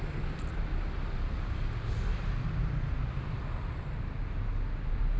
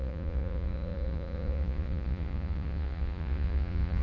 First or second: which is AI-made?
second